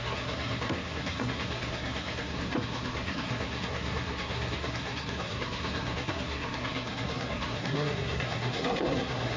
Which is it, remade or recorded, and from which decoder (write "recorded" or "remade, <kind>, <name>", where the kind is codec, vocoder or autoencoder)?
remade, codec, SNAC